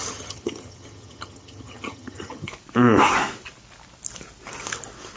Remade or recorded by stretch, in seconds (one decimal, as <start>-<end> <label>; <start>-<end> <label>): 0.0-2.5 remade; 2.5-5.2 recorded